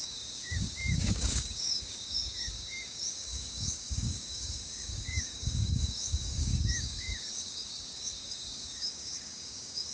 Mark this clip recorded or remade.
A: remade